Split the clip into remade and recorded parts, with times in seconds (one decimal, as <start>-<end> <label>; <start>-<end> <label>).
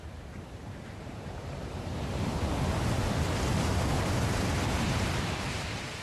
0.0-2.5 remade; 2.5-4.0 recorded; 4.0-6.0 remade